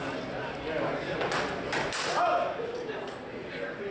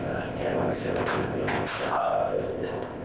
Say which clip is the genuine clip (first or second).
first